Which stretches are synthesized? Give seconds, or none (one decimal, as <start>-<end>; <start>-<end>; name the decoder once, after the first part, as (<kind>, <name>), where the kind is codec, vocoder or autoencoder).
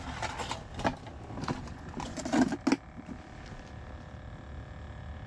1.6-2.2 (vocoder, Vocos)